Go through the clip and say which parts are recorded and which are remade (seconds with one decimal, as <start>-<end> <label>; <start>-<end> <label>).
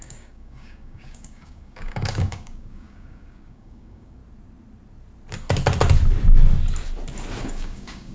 0.0-4.2 remade; 4.2-7.4 recorded; 7.4-8.1 remade